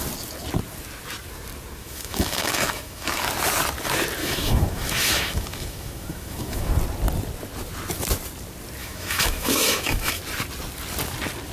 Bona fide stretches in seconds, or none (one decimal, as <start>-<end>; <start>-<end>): 0.0-1.8; 3.2-4.2; 6.7-8.8; 10.2-11.5